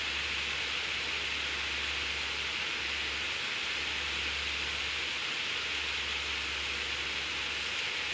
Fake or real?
real